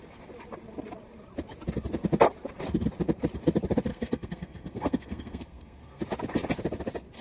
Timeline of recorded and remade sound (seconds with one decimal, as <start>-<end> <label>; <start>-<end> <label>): 0.0-3.9 recorded; 3.9-6.0 remade; 6.0-7.2 recorded